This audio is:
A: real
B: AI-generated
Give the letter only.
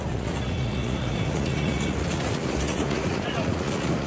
B